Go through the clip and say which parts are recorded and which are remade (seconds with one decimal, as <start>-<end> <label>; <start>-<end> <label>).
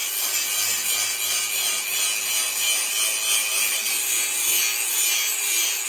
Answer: 0.0-5.9 recorded